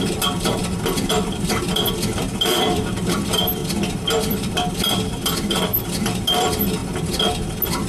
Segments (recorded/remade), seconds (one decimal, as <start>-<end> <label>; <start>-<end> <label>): 0.0-0.6 remade; 0.6-1.1 recorded; 1.1-3.6 remade; 3.6-4.2 recorded; 4.2-6.8 remade; 6.8-7.9 recorded